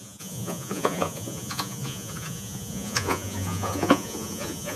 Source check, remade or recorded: remade